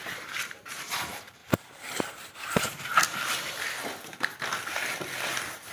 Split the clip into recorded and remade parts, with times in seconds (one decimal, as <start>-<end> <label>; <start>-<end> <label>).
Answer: 0.0-2.9 remade; 2.9-5.7 recorded